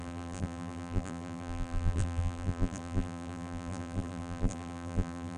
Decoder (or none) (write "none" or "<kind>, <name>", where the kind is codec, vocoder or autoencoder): vocoder, BigVGAN v2